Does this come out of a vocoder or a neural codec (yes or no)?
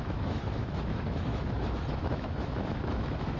yes